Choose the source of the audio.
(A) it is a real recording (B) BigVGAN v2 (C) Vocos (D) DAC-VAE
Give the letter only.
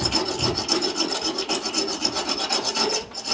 A